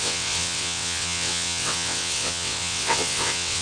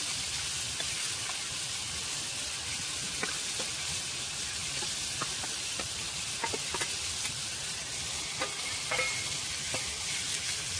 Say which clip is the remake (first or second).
first